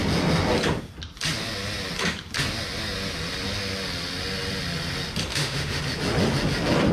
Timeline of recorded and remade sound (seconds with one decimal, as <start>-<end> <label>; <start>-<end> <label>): 0.0-5.3 recorded; 5.3-5.8 remade; 5.8-6.9 recorded